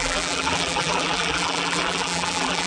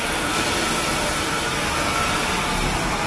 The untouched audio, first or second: second